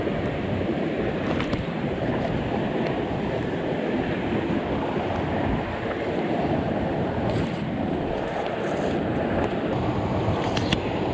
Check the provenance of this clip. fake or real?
real